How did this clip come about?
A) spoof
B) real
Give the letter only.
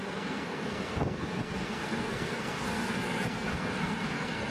A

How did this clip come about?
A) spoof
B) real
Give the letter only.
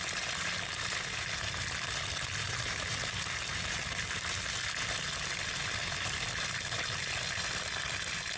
B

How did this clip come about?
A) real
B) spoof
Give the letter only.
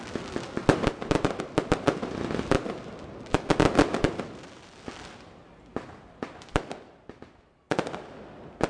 A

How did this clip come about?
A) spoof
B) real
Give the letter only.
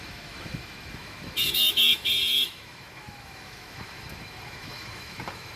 A